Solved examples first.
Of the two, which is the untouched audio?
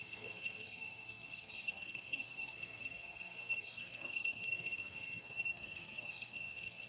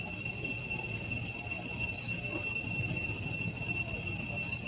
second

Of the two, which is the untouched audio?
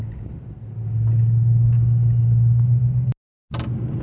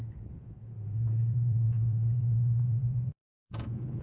first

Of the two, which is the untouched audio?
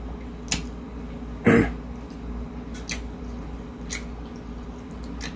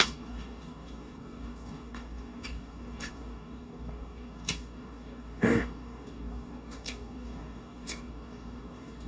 first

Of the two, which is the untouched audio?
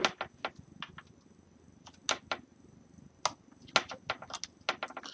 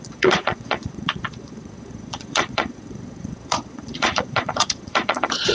first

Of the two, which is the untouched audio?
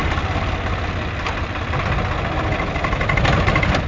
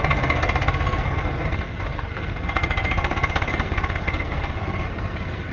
first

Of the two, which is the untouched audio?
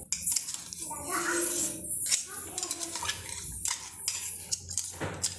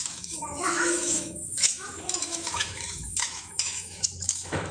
first